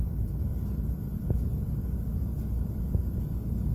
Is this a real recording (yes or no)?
yes